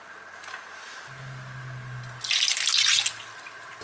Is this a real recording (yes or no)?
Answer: yes